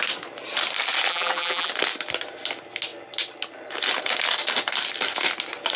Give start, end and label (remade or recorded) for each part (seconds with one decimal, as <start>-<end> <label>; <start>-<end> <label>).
0.0-1.1 recorded; 1.1-1.7 remade; 1.7-5.8 recorded

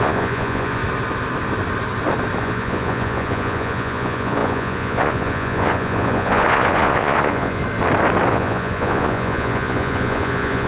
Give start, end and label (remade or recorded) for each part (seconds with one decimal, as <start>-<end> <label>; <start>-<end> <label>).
0.0-0.8 remade; 0.8-2.4 recorded; 2.4-7.6 remade; 7.6-8.3 recorded; 8.3-10.7 remade

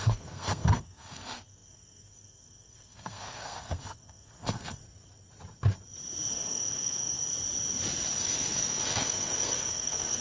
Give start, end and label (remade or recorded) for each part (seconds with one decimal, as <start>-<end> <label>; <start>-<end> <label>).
0.0-4.8 remade; 4.8-6.3 recorded; 6.3-7.3 remade; 7.3-8.2 recorded; 8.2-10.2 remade

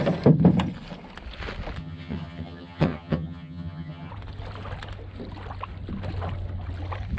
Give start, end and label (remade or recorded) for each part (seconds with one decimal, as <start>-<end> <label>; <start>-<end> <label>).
0.0-1.8 recorded; 1.8-4.1 remade; 4.1-7.2 recorded

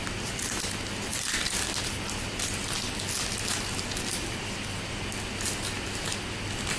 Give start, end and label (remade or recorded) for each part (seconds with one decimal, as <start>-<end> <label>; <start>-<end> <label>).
0.0-6.8 recorded

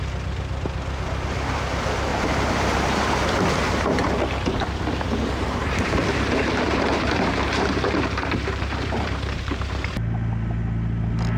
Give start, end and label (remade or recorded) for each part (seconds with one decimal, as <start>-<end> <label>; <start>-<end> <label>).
0.0-2.1 recorded; 2.1-3.0 remade; 3.0-5.6 recorded; 5.6-9.9 remade; 9.9-11.4 recorded

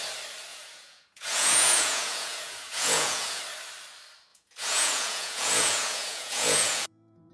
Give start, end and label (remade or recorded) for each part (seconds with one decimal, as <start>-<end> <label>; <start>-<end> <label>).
0.0-0.5 recorded; 0.5-3.4 remade; 3.4-4.3 recorded; 4.3-7.3 remade

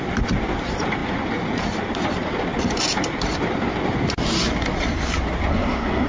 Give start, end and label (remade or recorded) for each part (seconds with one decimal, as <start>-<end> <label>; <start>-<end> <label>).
0.0-5.5 recorded; 5.5-6.1 remade